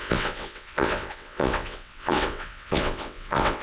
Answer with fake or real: fake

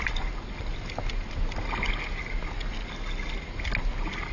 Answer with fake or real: real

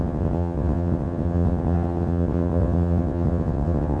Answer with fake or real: fake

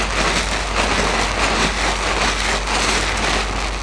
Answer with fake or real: real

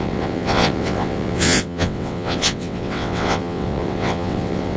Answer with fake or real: fake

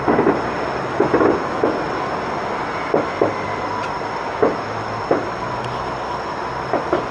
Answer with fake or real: real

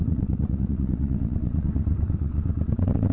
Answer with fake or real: fake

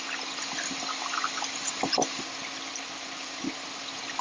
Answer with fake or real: real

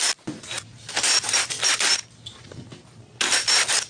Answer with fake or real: real